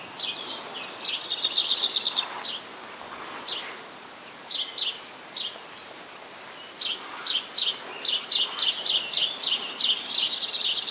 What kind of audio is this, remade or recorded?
recorded